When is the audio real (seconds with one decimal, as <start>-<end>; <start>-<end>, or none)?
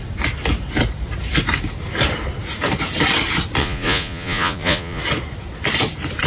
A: 0.0-3.6; 5.0-6.3